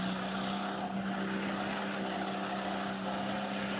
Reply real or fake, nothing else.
real